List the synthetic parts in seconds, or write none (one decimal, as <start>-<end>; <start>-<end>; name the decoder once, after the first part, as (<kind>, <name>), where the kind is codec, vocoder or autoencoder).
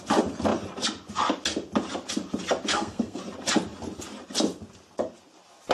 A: 2.7-3.2 (codec, SNAC)